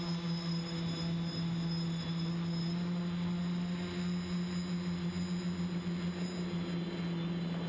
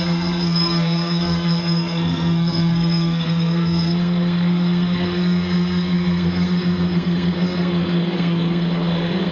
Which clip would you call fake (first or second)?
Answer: second